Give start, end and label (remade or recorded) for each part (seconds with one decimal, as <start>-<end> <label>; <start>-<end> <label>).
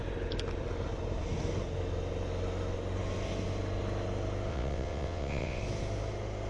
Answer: 0.0-4.5 recorded; 4.5-5.6 remade; 5.6-6.5 recorded